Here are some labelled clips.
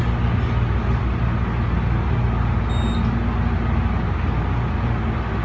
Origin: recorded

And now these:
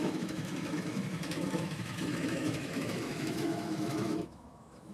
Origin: remade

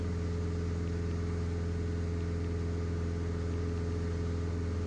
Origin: recorded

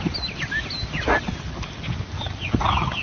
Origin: recorded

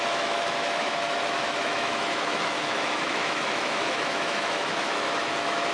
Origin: remade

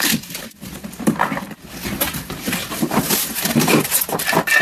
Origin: recorded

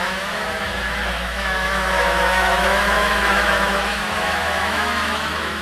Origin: remade